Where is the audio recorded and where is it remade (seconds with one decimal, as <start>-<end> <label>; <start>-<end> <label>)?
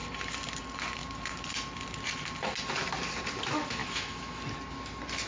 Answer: 0.0-3.8 recorded; 3.8-4.4 remade; 4.4-5.3 recorded